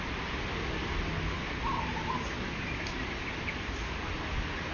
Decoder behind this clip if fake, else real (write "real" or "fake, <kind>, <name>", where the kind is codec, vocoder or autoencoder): real